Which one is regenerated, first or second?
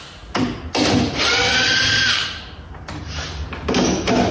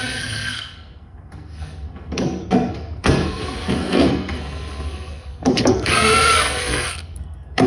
second